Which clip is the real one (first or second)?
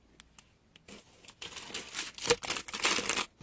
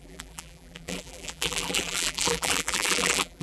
first